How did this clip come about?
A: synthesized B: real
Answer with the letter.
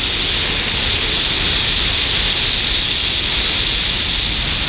B